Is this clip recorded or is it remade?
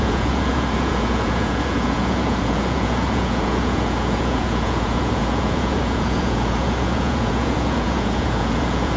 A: remade